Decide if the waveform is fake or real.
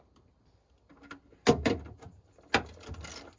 real